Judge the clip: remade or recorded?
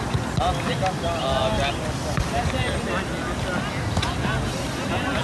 recorded